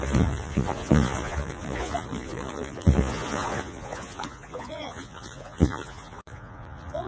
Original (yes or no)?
no